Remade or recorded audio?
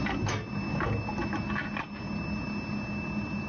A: recorded